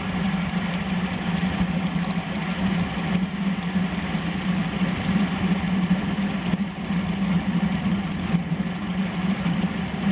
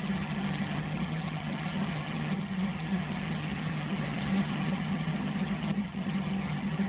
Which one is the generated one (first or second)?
second